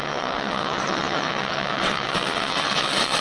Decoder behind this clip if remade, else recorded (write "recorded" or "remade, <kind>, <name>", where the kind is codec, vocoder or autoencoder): remade, vocoder, WaveNeXt